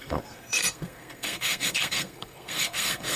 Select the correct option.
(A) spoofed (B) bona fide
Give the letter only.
A